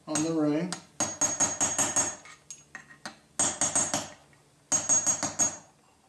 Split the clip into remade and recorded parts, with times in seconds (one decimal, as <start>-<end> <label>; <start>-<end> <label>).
0.0-6.1 recorded